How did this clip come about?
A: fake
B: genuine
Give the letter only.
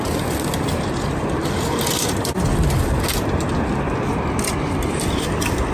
B